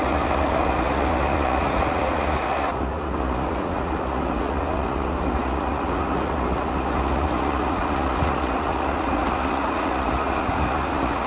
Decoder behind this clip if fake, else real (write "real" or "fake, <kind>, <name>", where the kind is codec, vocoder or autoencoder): fake, vocoder, Vocos